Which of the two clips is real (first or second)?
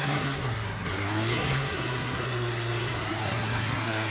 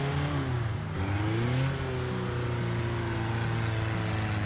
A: second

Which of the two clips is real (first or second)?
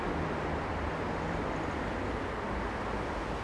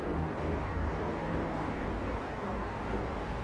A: first